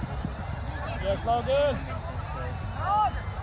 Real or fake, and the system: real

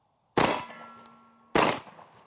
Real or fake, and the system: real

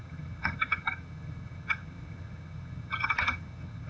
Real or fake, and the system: fake, vocoder, HiFi-GAN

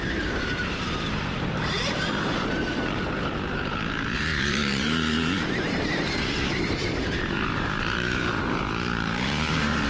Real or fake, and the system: fake, vocoder, BigVGAN v2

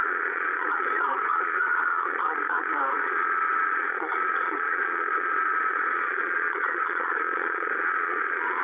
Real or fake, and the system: fake, vocoder, Vocos